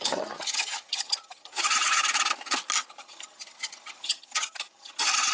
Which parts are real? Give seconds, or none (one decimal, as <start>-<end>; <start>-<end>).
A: 2.0-2.9